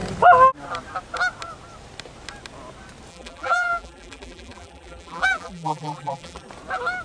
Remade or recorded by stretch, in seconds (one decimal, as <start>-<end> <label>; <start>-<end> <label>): 0.0-3.1 recorded; 3.1-6.5 remade; 6.5-7.0 recorded